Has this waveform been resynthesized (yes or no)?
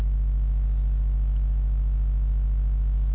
no